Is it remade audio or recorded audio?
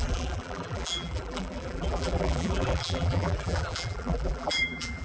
remade